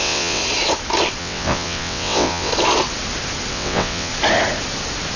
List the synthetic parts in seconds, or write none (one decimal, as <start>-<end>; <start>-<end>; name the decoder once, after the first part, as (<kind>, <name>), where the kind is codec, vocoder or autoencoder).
0.0-0.4 (vocoder, WaveNeXt); 1.2-2.5; 3.5-4.1